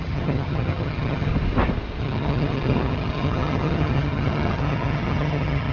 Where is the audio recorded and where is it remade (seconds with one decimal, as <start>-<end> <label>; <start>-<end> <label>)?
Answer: 0.0-1.3 remade; 1.3-2.0 recorded; 2.0-5.7 remade

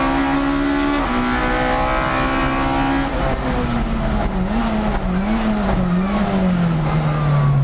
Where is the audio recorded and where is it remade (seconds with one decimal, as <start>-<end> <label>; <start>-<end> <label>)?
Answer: 0.0-7.6 recorded

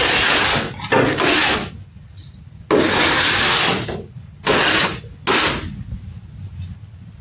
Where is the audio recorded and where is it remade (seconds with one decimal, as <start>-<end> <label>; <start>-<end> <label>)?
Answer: 0.0-7.2 recorded

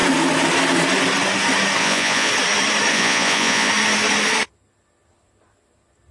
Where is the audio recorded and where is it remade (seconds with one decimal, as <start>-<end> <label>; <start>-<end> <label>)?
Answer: 0.0-1.8 recorded; 1.8-2.3 remade; 2.3-2.9 recorded; 2.9-3.7 remade; 3.7-6.1 recorded

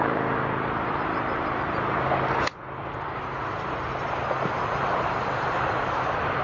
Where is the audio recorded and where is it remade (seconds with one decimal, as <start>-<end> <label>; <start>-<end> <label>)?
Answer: 0.0-3.8 remade; 3.8-4.6 recorded; 4.6-6.4 remade